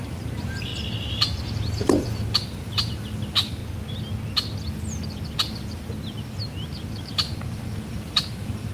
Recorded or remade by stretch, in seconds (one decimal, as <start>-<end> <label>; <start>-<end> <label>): 0.0-0.7 remade; 0.7-1.7 recorded; 1.7-3.6 remade; 3.6-7.0 recorded; 7.0-8.7 remade